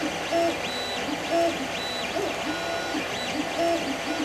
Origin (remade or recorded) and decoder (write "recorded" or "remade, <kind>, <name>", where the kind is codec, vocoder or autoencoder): recorded